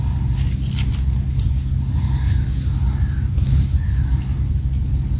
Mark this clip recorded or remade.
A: recorded